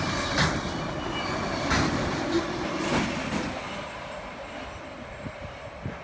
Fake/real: real